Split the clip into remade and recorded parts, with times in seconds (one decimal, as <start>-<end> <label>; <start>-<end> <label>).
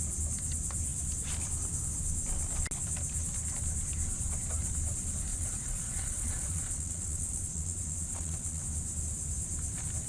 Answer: 0.0-5.3 recorded; 5.3-8.6 remade; 8.6-10.1 recorded